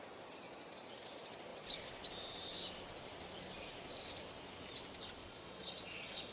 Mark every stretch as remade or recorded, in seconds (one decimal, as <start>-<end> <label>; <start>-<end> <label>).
0.0-5.2 recorded; 5.2-6.3 remade